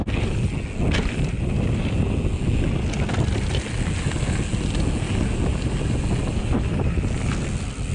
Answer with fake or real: real